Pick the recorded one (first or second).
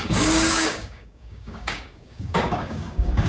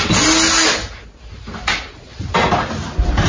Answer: second